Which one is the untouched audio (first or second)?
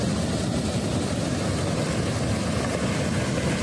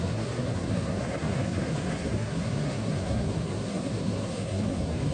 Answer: first